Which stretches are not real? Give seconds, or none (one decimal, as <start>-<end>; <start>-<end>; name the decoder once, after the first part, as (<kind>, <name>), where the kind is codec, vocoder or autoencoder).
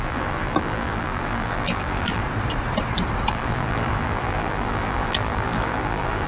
0.0-2.2 (vocoder, BigVGAN v2); 3.3-6.3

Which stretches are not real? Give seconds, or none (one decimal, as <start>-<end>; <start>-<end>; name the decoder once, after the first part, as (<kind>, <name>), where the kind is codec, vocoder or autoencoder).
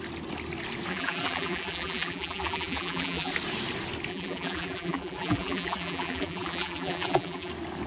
0.9-3.3 (vocoder, BigVGAN v2); 4.1-7.5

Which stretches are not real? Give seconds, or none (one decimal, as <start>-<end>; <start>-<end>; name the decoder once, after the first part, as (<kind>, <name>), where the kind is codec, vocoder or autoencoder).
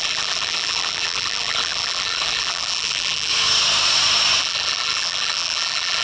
0.0-3.3 (vocoder, BigVGAN v2); 4.4-6.0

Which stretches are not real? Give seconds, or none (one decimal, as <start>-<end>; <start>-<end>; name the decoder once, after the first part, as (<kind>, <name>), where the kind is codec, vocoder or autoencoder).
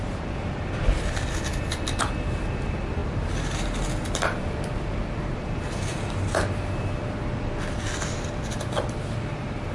3.0-5.7 (vocoder, BigVGAN v2)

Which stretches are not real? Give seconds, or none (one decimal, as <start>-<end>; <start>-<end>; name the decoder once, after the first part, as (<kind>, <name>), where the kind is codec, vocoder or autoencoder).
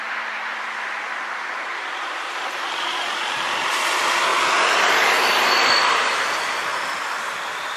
0.0-4.3 (vocoder, BigVGAN v2)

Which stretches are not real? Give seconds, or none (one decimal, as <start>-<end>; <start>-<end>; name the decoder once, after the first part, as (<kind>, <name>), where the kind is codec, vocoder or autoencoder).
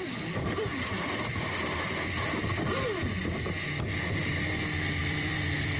5.0-5.8 (vocoder, BigVGAN v2)